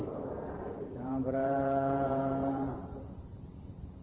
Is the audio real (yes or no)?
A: no